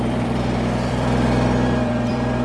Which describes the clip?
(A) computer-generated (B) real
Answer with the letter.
A